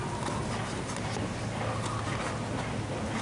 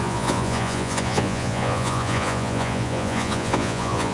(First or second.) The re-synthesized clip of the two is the second